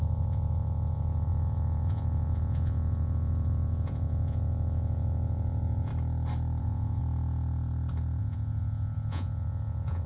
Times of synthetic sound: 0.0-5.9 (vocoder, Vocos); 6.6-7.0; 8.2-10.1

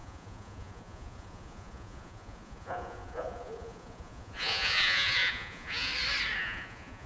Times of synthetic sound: 0.0-5.9 (vocoder, Vocos); 6.4-7.1

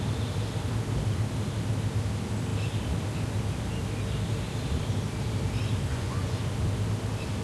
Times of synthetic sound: 5.9-6.4 (vocoder, Vocos)

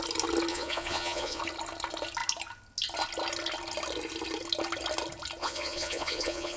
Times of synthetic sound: 0.5-1.4 (vocoder, Vocos); 5.4-6.6

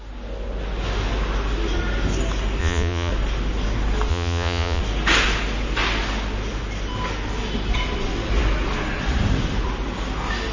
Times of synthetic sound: 2.6-3.1 (vocoder, Vocos); 4.1-4.8

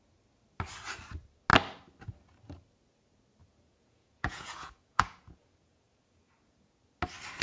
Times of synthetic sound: 3.4-6.8 (vocoder, Vocos)

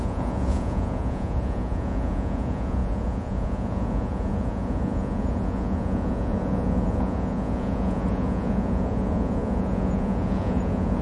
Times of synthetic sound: 0.0-11.0 (vocoder, Vocos)

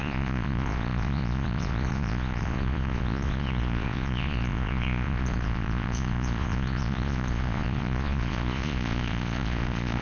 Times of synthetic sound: 0.0-10.0 (vocoder, Vocos)